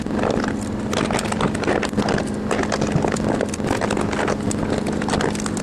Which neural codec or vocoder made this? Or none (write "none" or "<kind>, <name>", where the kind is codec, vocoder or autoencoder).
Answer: none